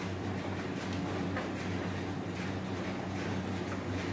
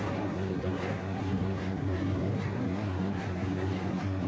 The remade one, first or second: second